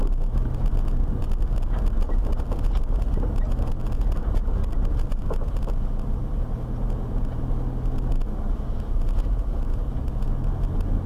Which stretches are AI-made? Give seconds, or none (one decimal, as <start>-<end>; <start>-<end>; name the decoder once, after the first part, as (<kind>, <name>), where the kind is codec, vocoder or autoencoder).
none